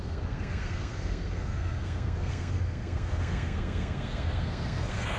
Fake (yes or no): yes